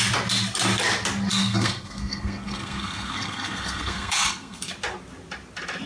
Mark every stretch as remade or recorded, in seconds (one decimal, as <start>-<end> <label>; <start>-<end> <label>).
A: 0.0-1.3 recorded; 1.3-4.7 remade; 4.7-5.9 recorded